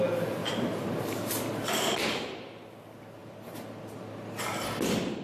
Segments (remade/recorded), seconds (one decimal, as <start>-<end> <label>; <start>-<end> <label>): 0.0-0.4 recorded; 0.4-0.9 remade; 0.9-3.2 recorded; 3.2-4.4 remade; 4.4-5.2 recorded